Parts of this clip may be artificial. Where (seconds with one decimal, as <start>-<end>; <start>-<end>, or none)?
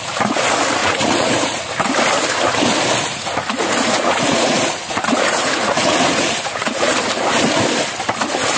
0.8-1.6; 3.1-6.9